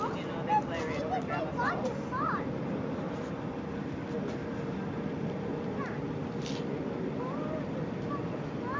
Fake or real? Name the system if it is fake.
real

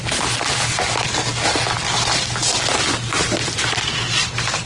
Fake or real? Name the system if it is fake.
real